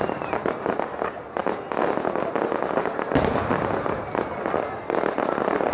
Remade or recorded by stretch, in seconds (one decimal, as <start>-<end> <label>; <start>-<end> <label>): 0.0-5.7 recorded